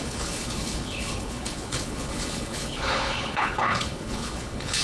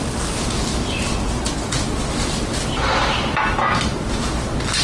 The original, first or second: second